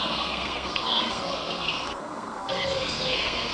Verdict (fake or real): fake